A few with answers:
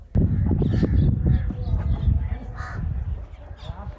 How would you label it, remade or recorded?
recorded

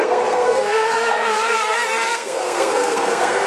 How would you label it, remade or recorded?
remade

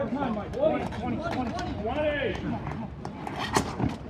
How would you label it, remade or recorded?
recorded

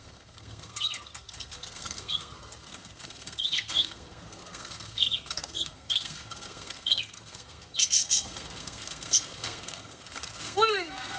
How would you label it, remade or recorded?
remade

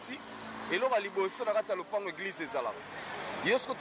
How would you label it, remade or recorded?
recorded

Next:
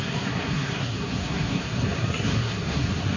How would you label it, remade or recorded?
remade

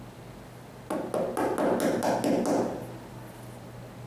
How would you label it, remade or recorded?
recorded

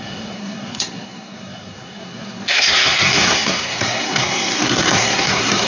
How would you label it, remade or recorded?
remade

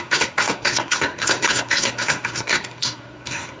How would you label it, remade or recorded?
remade